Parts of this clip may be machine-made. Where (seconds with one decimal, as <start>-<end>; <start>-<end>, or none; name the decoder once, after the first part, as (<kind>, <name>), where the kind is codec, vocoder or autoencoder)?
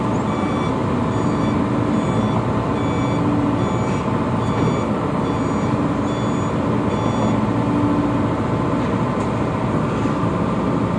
none